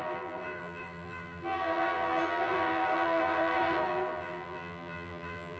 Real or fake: fake